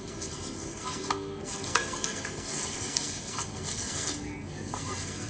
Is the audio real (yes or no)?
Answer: no